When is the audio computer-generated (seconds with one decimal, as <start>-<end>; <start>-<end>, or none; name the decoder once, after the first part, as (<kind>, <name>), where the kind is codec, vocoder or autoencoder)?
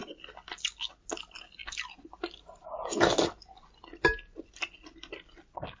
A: none